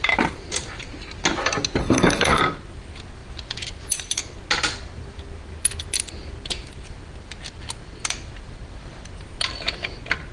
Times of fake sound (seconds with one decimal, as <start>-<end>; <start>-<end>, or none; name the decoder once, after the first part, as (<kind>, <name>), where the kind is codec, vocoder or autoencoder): 1.8-2.4 (codec, SNAC)